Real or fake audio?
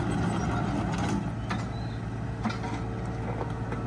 real